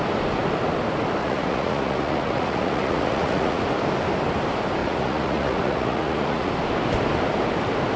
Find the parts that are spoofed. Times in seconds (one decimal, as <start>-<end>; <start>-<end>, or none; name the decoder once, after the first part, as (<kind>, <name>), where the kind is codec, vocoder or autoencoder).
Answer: 1.2-3.6 (vocoder, Vocos); 4.8-6.5